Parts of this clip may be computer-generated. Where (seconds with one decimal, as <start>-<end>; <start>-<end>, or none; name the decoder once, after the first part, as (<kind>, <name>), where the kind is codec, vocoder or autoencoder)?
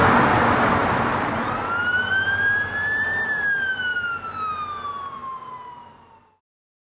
0.8-3.4 (vocoder, BigVGAN v2); 3.9-4.5